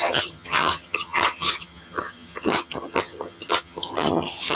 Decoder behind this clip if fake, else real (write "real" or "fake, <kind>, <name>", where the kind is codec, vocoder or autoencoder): fake, vocoder, HiFi-GAN